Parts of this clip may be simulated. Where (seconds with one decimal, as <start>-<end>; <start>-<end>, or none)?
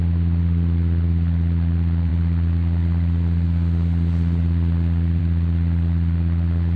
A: none